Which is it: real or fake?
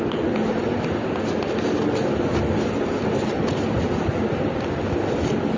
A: real